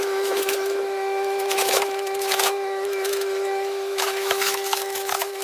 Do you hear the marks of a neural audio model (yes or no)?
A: yes